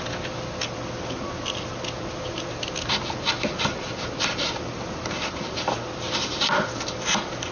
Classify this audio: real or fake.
real